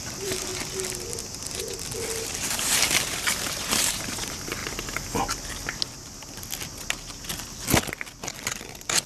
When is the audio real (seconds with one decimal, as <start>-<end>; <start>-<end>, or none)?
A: 0.5-2.2; 4.6-8.6

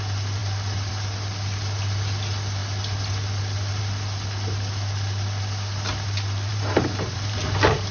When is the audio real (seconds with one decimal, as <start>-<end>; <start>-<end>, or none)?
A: 0.0-6.5; 7.4-7.9

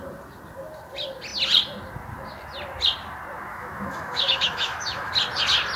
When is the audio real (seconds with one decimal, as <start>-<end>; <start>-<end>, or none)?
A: 0.0-3.5; 5.1-5.8

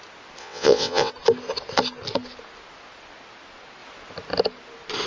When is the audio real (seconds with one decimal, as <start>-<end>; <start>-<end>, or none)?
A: 0.0-0.4; 1.1-5.1

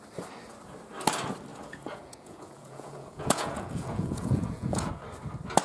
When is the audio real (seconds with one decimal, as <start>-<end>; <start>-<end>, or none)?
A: 0.0-1.5; 4.9-5.6

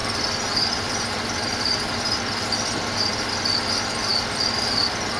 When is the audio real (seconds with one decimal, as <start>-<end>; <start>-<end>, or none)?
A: 3.1-5.2

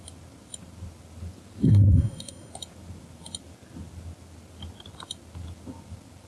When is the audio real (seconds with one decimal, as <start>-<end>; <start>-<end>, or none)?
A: 0.0-1.7; 2.5-6.3

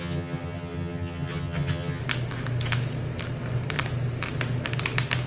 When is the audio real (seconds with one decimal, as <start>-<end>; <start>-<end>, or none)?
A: 2.0-5.3